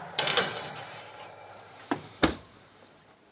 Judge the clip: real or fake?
fake